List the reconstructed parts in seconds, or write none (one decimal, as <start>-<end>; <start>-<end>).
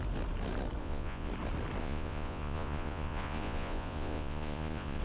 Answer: 0.8-1.3; 1.8-5.0